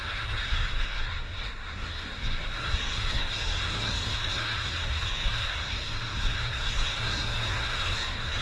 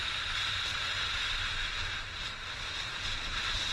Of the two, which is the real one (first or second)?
second